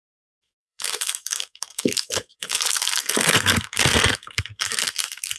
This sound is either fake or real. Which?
fake